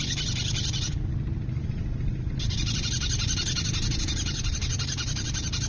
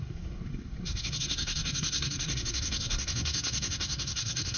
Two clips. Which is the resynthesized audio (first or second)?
second